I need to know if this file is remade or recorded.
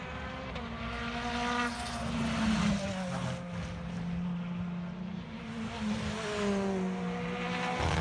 recorded